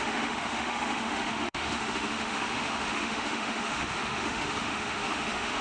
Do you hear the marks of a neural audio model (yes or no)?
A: yes